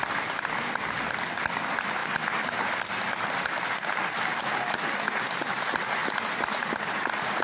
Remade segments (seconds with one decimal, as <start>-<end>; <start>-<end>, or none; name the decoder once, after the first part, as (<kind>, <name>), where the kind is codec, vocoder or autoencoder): none